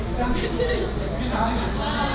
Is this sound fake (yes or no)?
no